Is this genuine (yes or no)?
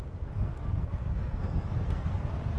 no